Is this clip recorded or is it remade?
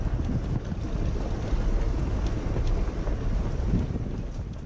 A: recorded